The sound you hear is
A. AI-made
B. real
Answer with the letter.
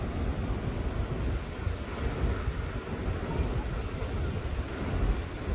B